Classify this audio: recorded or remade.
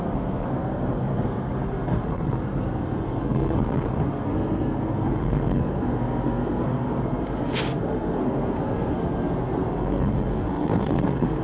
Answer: remade